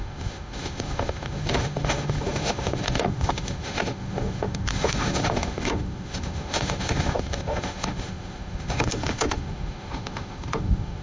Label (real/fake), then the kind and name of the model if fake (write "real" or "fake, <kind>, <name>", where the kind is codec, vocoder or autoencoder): fake, autoencoder, DAC-VAE